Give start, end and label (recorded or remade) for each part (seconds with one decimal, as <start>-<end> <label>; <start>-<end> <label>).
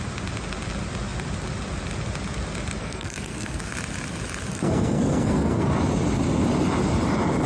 0.0-2.8 recorded; 2.8-3.7 remade; 3.7-4.5 recorded; 4.5-5.7 remade; 5.7-7.5 recorded